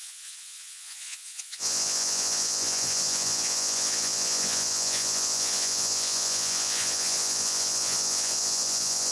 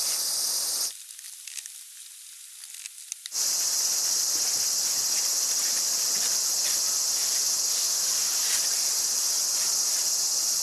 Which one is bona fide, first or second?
second